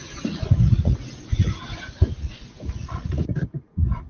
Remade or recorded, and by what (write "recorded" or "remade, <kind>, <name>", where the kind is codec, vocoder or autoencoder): remade, vocoder, Vocos